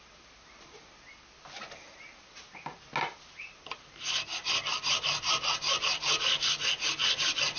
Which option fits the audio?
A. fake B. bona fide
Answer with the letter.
B